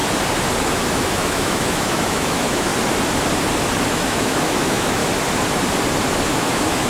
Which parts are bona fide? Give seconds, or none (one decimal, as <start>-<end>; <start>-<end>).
0.0-0.6; 2.7-3.9; 5.0-6.3